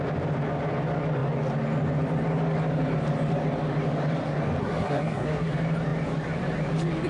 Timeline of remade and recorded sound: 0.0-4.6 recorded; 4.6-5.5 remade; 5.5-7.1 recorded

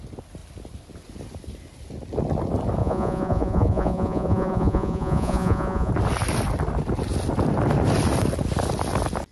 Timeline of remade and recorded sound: 0.0-2.8 recorded; 2.8-5.9 remade; 5.9-9.3 recorded

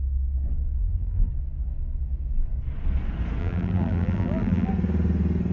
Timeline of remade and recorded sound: 0.0-0.8 recorded; 0.8-1.3 remade; 1.3-3.4 recorded; 3.4-4.7 remade; 4.7-5.5 recorded

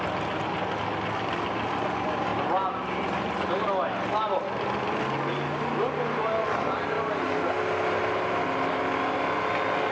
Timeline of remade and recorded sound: 0.0-9.9 recorded

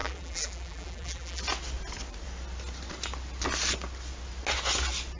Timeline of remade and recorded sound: 0.0-1.4 remade; 1.4-5.2 recorded

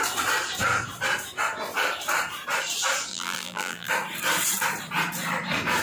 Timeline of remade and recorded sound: 0.0-3.1 recorded; 3.1-3.9 remade; 3.9-5.8 recorded

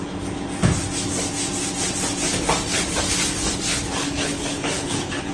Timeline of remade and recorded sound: 0.0-3.7 recorded; 3.7-5.3 remade

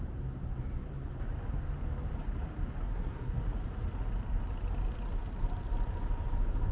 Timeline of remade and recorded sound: 0.0-2.8 recorded; 2.8-3.4 remade; 3.4-6.7 recorded